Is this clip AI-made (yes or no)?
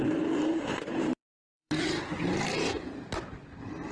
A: yes